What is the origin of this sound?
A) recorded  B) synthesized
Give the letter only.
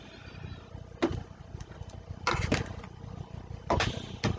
A